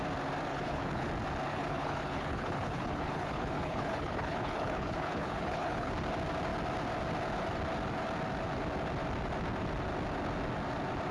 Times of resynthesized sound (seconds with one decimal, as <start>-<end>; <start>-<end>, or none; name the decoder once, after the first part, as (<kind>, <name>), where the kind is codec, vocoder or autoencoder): 0.5-1.1 (codec, HILCodec); 1.5-5.9